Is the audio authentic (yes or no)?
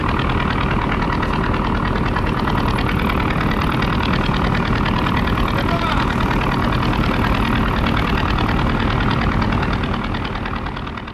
yes